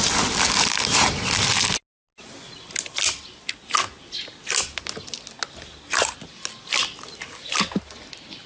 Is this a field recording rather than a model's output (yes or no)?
yes